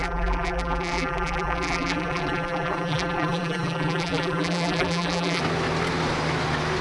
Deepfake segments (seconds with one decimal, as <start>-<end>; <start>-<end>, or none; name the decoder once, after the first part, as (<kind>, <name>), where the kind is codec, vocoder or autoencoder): 0.0-5.4 (vocoder, BigVGAN v2)